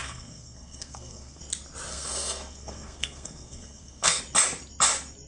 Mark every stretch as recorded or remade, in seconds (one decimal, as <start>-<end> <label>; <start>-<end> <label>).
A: 0.0-1.4 remade; 1.4-1.9 recorded; 1.9-4.2 remade; 4.2-5.3 recorded